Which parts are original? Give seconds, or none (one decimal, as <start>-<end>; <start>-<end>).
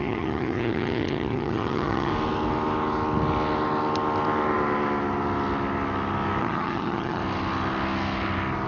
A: 2.1-6.4; 7.2-8.7